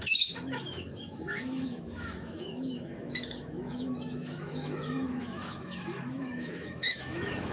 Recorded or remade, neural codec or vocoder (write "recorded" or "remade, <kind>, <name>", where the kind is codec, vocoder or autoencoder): remade, autoencoder, DAC-VAE